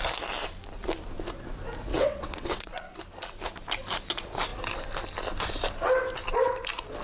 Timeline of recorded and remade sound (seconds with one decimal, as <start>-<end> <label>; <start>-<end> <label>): 0.0-1.9 recorded; 1.9-2.8 remade; 2.8-7.0 recorded